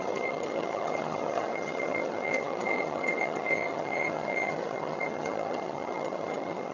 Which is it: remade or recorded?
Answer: remade